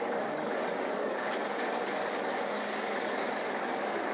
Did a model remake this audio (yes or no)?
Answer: yes